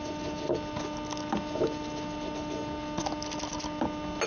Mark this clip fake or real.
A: real